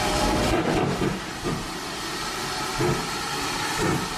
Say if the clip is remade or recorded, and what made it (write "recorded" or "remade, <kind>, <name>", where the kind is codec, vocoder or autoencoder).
recorded